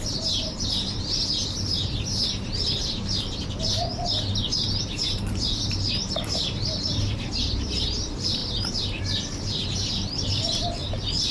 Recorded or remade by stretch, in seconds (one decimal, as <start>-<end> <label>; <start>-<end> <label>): 0.0-3.9 remade; 3.9-4.8 recorded; 4.8-11.3 remade